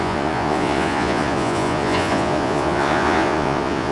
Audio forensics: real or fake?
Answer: fake